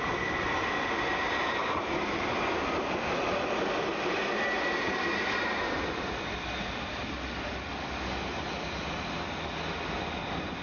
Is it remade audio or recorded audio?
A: recorded